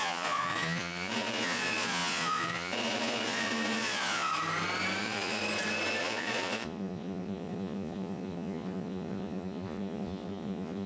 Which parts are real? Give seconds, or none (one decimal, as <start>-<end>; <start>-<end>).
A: 4.3-5.0; 5.4-6.0